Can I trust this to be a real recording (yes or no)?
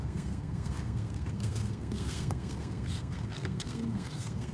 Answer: no